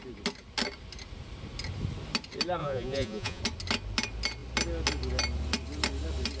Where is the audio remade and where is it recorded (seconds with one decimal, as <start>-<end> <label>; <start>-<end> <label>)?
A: 0.0-2.6 recorded; 2.6-3.4 remade; 3.4-6.4 recorded